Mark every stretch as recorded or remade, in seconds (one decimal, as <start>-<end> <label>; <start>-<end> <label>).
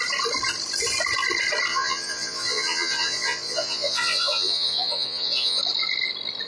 0.0-1.7 recorded; 1.7-5.6 remade; 5.6-6.5 recorded